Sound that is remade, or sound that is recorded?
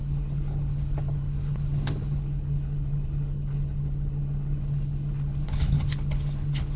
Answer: remade